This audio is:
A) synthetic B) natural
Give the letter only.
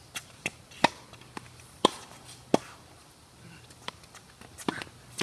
B